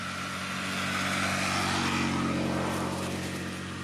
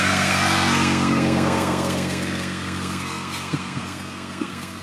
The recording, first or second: first